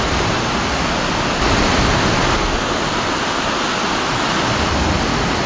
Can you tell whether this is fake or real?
real